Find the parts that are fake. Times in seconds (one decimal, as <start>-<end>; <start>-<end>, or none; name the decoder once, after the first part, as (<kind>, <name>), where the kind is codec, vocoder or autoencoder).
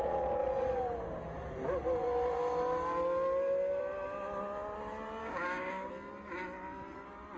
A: 5.2-5.9 (codec, DAC)